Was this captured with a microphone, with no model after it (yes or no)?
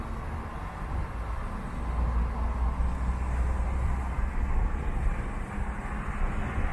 yes